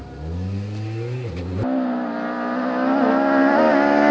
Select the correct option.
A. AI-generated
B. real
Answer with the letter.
B